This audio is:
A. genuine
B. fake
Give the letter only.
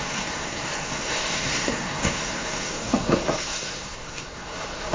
B